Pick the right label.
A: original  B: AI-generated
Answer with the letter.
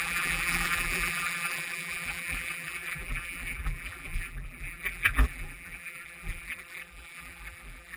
B